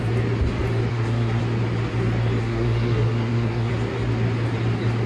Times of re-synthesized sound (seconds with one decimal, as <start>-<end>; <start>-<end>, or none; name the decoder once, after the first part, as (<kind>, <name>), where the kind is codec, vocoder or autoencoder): 0.9-1.4 (codec, SNAC); 2.4-3.7